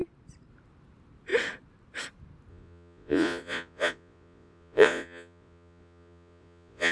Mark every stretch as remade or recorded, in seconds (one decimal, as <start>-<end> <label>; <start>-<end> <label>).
0.0-2.5 recorded; 2.5-6.9 remade